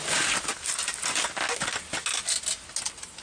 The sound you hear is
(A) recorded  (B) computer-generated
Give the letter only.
A